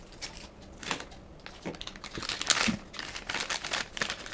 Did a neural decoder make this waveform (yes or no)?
no